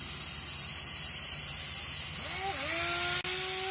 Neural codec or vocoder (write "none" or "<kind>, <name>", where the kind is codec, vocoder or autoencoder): none